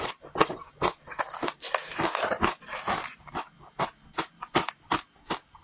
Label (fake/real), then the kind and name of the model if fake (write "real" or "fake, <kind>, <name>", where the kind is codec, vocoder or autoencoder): real